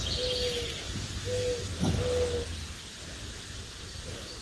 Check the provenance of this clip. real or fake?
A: real